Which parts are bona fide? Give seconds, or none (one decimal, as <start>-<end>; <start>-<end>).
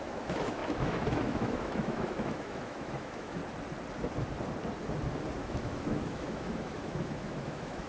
3.4-5.4